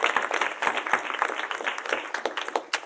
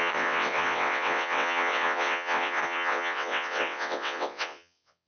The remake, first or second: second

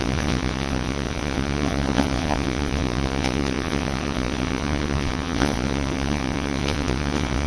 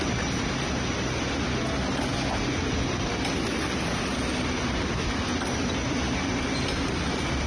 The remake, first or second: first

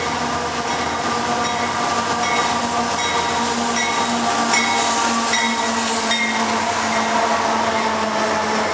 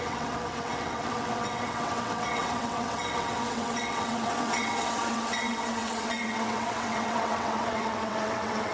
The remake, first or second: second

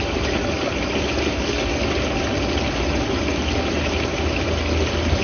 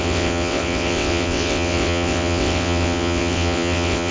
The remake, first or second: second